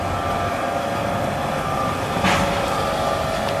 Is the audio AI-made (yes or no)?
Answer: no